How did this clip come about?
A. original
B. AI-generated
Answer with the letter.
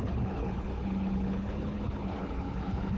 B